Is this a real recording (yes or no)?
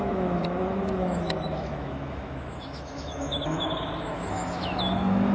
no